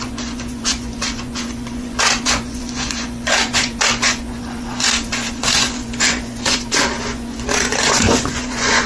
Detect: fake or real fake